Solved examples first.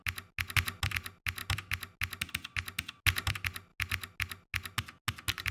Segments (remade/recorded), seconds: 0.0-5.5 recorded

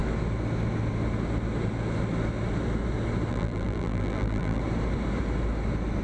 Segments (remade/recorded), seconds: 0.0-3.3 recorded; 3.3-4.6 remade; 4.6-6.0 recorded